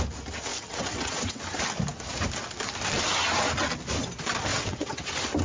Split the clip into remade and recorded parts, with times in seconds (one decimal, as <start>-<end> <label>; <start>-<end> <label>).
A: 0.0-0.5 recorded; 0.5-1.4 remade; 1.4-4.5 recorded; 4.5-5.0 remade; 5.0-5.4 recorded